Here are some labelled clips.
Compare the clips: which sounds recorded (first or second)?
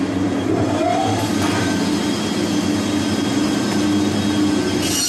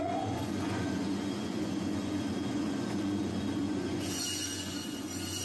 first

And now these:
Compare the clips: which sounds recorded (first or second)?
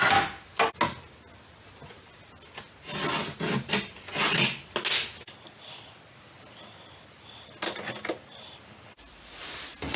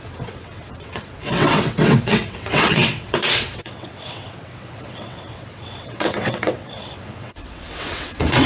first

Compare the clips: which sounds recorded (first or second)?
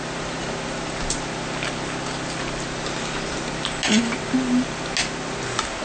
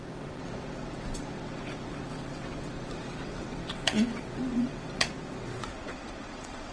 first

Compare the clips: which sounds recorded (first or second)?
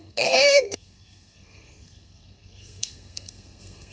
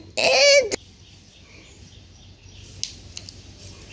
second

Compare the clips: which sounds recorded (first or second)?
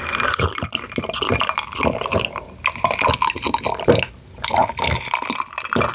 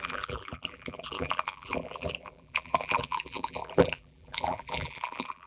first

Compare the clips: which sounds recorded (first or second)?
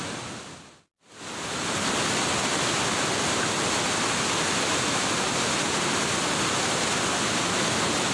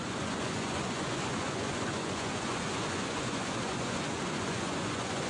first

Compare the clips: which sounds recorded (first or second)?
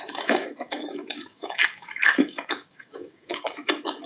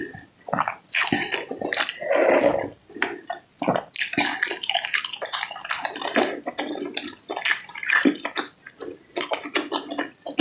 second